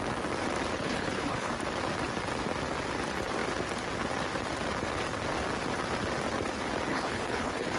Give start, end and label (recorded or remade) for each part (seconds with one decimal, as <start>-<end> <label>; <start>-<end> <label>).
0.0-0.7 recorded; 0.7-1.5 remade; 1.5-6.9 recorded; 6.9-7.8 remade